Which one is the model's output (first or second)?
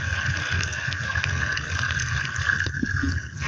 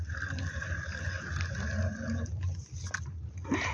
first